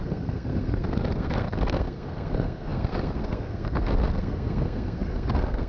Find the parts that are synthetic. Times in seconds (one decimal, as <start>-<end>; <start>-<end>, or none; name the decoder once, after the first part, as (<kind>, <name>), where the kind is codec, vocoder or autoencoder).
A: 0.0-5.7 (codec, SNAC)